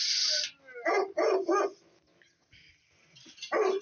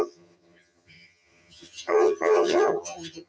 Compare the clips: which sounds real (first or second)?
first